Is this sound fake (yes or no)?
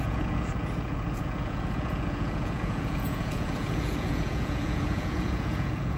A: yes